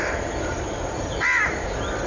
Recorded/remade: remade